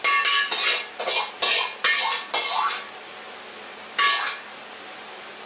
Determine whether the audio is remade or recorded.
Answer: recorded